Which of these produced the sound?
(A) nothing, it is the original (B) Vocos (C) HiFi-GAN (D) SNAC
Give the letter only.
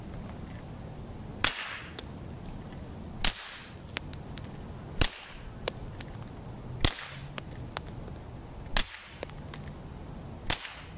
A